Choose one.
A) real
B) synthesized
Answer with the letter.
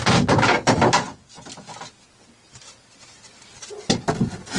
A